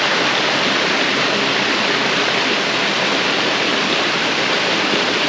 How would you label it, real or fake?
real